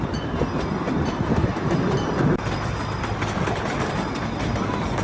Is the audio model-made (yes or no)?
no